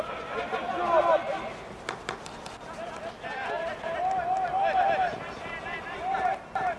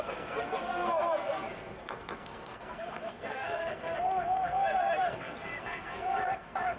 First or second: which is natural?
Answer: first